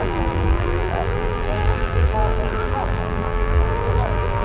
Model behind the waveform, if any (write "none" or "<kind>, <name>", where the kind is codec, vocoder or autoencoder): vocoder, BigVGAN v2